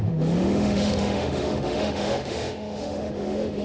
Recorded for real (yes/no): no